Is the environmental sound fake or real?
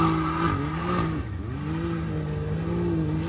real